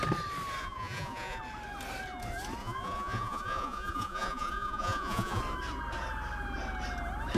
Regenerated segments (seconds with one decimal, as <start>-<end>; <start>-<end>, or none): 0.6-1.4; 2.6-5.4